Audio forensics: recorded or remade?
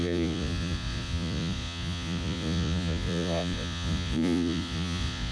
remade